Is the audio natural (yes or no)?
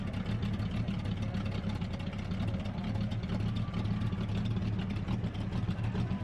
yes